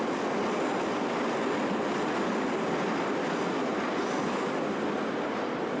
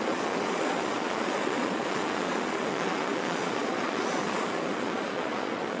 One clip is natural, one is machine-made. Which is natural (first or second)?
first